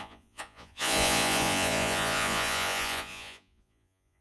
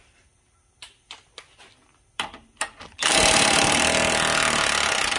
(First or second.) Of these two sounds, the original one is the second